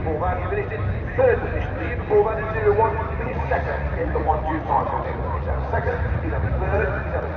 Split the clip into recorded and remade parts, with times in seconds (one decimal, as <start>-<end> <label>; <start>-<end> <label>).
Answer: 0.0-3.2 recorded; 3.2-7.4 remade